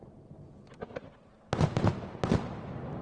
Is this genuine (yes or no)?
yes